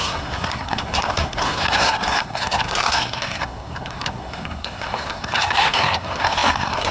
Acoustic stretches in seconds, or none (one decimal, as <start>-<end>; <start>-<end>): none